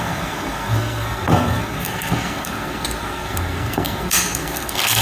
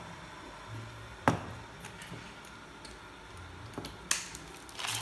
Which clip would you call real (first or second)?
second